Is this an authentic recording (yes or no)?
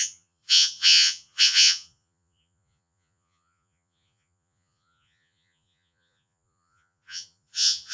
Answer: no